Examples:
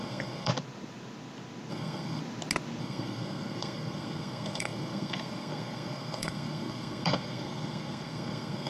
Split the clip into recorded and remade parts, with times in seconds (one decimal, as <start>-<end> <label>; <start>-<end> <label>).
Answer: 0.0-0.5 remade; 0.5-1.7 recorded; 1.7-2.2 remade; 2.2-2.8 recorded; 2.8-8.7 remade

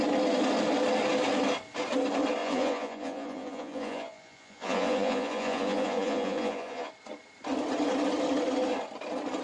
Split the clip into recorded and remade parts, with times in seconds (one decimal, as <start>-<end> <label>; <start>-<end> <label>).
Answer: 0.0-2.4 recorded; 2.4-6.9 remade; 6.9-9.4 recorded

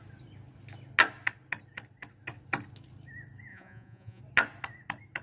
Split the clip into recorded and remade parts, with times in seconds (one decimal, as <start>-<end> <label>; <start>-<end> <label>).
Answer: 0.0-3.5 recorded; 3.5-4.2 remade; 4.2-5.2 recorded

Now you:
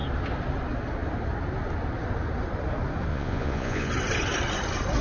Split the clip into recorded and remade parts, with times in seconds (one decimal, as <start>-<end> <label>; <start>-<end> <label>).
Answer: 0.0-3.1 recorded; 3.1-3.9 remade; 3.9-5.0 recorded

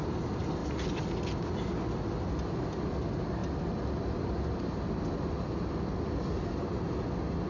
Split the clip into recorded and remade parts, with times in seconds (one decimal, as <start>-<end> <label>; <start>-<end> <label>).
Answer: 0.0-7.5 recorded

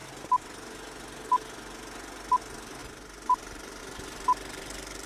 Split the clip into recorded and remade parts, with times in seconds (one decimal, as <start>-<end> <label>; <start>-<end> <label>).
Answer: 0.0-5.1 recorded

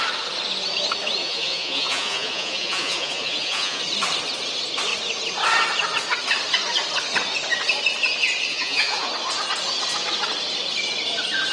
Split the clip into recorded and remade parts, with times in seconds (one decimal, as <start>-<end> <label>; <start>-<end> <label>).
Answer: 0.0-1.2 recorded; 1.2-3.8 remade; 3.8-8.5 recorded; 8.5-9.1 remade; 9.1-11.5 recorded